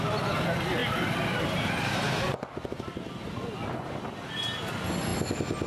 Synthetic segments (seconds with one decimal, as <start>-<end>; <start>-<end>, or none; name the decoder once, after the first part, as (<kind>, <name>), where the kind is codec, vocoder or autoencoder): none